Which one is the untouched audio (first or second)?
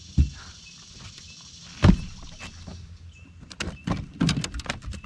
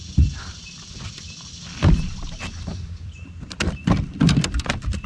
first